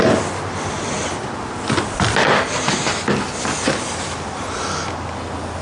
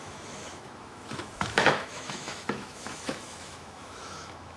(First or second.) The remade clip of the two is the second